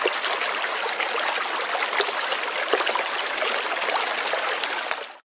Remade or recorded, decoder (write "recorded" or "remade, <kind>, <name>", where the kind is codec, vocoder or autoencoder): recorded